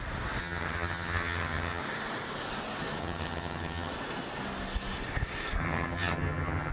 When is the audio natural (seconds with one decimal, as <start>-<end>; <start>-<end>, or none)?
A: 0.0-0.4; 1.8-3.0; 3.9-5.6